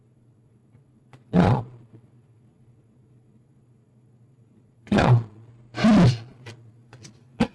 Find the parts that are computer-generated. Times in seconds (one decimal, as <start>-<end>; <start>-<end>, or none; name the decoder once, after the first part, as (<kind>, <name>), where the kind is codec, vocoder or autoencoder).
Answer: 0.0-5.5 (vocoder, Vocos); 6.1-7.5